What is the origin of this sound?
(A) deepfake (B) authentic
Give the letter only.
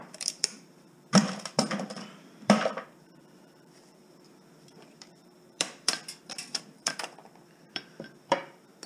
A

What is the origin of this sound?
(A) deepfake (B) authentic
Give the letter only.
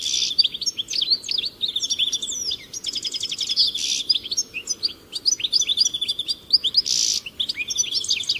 B